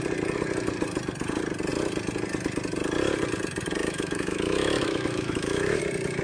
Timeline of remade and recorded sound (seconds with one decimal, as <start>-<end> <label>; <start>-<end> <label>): 0.0-3.8 recorded; 3.8-5.8 remade; 5.8-6.2 recorded